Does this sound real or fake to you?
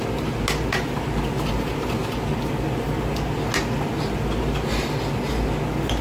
real